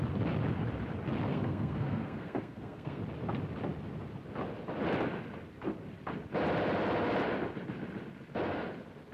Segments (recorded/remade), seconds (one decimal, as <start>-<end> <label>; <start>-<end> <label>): 0.0-1.3 recorded; 1.3-3.0 remade; 3.0-9.1 recorded